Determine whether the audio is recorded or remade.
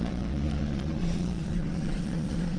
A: remade